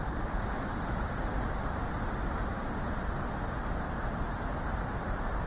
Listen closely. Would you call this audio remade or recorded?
recorded